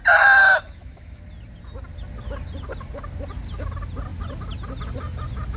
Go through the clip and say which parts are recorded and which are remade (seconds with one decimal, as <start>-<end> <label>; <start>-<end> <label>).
0.0-0.4 recorded; 0.4-1.2 remade; 1.2-5.6 recorded

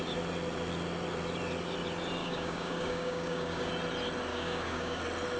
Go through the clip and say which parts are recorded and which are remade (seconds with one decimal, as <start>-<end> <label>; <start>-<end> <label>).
0.0-2.2 recorded; 2.2-3.7 remade; 3.7-4.3 recorded; 4.3-5.0 remade; 5.0-5.4 recorded